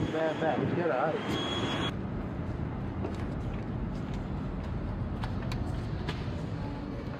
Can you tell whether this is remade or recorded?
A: recorded